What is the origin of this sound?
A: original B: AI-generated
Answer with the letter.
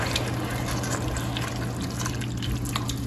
A